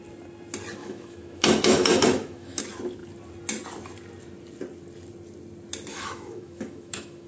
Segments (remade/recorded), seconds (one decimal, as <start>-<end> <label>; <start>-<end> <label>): 0.0-0.8 recorded; 0.8-2.6 remade; 2.6-5.9 recorded; 5.9-7.3 remade